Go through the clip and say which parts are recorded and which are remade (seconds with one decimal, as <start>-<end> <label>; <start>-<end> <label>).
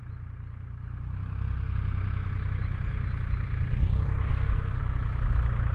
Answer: 0.0-4.3 recorded; 4.3-4.8 remade; 4.8-5.7 recorded